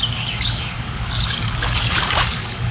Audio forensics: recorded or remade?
remade